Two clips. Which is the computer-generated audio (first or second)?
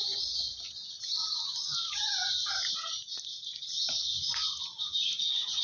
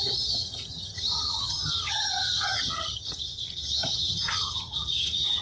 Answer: second